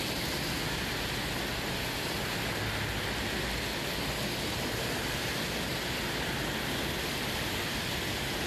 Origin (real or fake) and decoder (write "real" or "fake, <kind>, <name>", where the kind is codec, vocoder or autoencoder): real